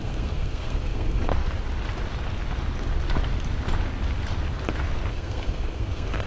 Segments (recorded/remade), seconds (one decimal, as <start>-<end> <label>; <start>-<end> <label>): 0.0-1.3 remade; 1.3-5.1 recorded; 5.1-6.3 remade